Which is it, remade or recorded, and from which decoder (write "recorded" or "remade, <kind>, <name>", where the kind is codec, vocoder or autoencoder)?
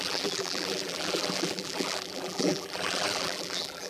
remade, vocoder, BigVGAN v2